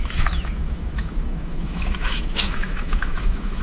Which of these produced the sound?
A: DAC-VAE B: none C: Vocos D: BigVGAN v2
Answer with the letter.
A